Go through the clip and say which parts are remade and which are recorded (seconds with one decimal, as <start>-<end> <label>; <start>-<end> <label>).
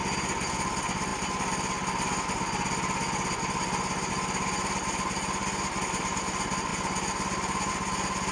0.0-8.3 recorded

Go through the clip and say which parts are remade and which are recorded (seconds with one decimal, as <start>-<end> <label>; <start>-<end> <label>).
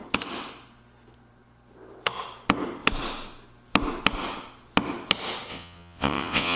0.0-5.5 recorded; 5.5-6.6 remade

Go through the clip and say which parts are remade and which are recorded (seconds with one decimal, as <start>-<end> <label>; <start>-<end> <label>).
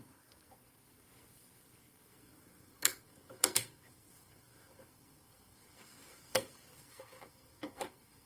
0.0-8.3 remade